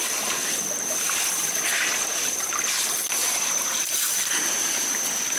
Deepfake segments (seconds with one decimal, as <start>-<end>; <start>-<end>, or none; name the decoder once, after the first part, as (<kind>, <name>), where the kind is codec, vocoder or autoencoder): 1.7-2.7 (vocoder, BigVGAN v2)